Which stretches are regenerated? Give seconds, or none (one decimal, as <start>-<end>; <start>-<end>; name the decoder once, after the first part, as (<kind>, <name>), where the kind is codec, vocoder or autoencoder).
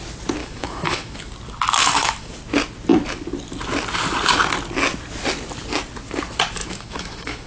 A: 0.4-1.3 (autoencoder, DAC-VAE); 1.8-2.3; 6.6-7.5